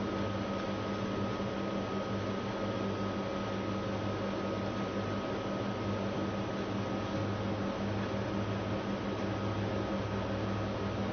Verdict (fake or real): real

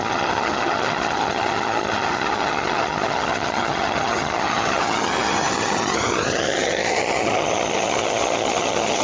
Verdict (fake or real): fake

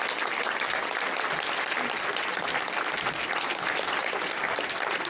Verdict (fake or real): real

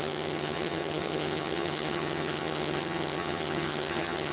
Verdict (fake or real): fake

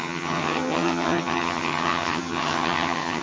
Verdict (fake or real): fake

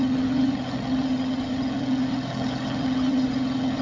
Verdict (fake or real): fake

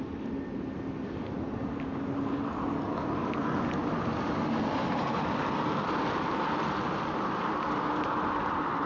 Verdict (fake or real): real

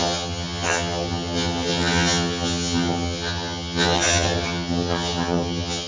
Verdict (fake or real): fake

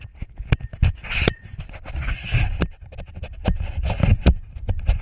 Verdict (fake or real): real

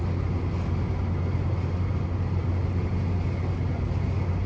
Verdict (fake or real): real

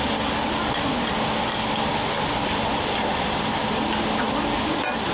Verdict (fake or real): real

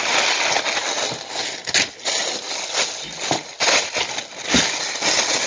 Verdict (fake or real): real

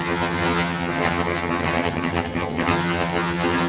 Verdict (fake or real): fake